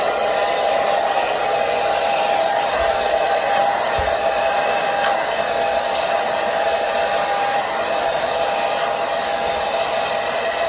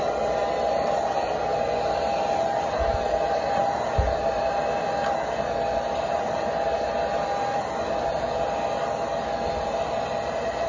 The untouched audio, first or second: second